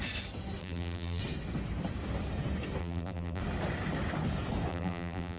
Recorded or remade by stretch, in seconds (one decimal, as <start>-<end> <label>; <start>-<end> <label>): 0.0-0.6 recorded; 0.6-1.2 remade; 1.2-2.8 recorded; 2.8-3.4 remade; 3.4-4.7 recorded; 4.7-5.4 remade

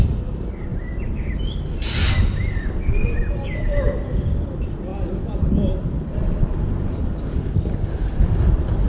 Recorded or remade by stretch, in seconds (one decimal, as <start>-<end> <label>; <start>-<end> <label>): 0.0-0.7 recorded; 0.7-1.6 remade; 1.6-4.9 recorded; 4.9-8.1 remade; 8.1-8.9 recorded